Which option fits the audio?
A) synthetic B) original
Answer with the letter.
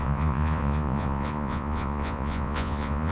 A